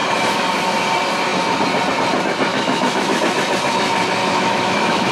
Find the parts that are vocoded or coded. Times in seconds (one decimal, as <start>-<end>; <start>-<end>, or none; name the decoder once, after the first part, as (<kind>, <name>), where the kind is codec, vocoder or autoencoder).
2.5-3.2 (autoencoder, DAC-VAE); 4.2-5.1